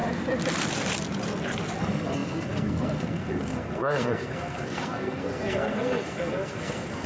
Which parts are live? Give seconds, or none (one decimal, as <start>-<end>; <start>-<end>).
0.0-1.8